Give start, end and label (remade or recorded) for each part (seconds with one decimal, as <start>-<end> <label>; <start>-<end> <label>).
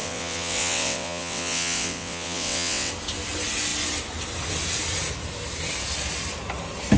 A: 0.0-2.9 remade; 2.9-7.0 recorded